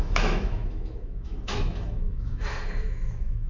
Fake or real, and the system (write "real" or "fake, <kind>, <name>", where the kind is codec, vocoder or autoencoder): fake, autoencoder, DAC-VAE